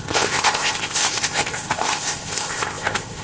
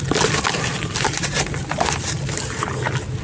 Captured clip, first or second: second